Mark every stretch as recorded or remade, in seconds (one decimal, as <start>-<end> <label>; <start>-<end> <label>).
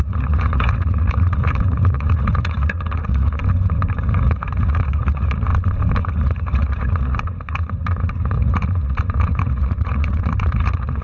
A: 0.0-3.4 remade; 3.4-4.0 recorded; 4.0-5.5 remade; 5.5-6.0 recorded; 6.0-11.0 remade